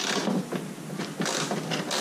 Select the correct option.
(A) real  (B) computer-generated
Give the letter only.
A